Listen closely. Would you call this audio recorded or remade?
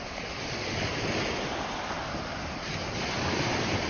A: recorded